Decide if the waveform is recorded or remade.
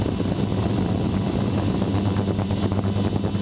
recorded